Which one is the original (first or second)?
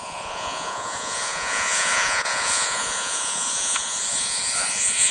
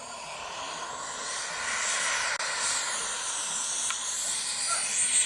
second